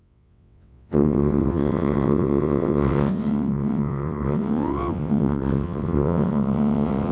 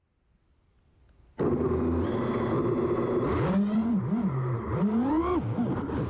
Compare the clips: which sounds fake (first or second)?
first